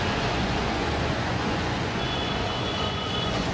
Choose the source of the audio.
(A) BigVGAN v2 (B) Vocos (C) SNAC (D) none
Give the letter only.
B